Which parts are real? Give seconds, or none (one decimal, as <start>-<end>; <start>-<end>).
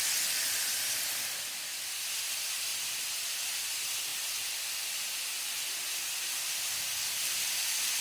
0.0-8.0